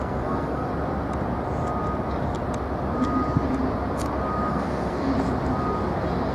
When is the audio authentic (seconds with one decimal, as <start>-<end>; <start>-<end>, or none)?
0.7-4.5; 5.1-6.3